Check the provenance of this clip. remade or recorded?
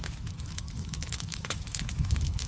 remade